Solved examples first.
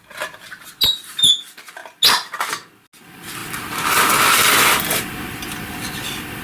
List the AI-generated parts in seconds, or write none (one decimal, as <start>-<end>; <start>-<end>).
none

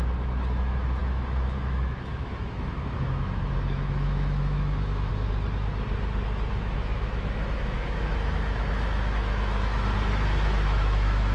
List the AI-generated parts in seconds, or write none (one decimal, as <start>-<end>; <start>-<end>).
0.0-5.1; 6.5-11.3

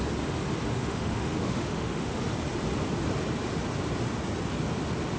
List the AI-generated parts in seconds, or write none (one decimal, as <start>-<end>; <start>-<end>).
0.7-2.2

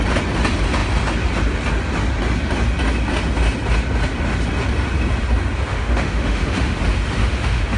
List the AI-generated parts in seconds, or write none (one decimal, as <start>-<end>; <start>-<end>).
5.7-6.8; 7.2-7.8